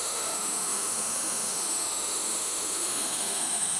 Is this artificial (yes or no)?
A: yes